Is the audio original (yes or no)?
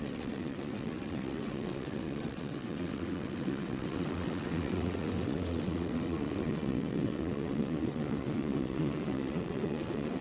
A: no